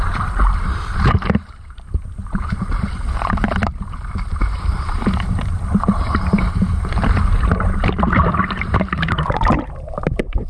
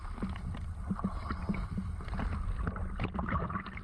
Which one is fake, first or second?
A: first